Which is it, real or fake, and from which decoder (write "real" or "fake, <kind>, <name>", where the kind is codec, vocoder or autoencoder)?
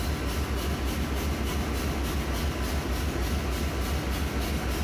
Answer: real